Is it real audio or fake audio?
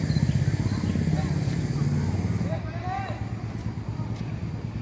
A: real